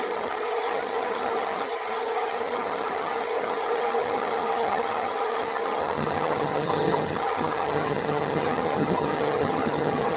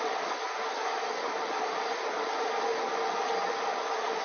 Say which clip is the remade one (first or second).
first